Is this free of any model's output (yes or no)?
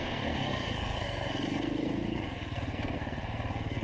no